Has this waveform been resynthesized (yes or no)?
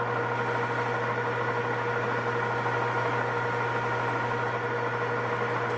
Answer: no